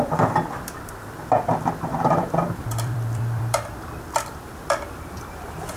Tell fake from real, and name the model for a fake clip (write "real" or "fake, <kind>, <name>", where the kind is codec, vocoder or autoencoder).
fake, vocoder, BigVGAN v2